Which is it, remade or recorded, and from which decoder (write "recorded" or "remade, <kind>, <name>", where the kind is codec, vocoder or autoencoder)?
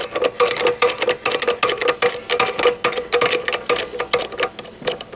recorded